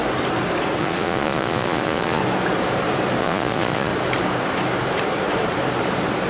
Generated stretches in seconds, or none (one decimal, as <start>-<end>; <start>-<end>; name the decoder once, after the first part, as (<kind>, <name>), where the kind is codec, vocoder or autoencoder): 0.8-2.2 (vocoder, Vocos); 3.2-3.9